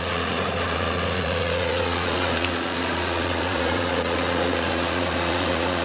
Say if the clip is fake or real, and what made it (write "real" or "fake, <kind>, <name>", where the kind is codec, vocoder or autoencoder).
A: fake, vocoder, Vocos